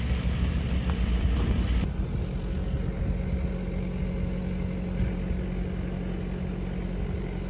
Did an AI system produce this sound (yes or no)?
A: no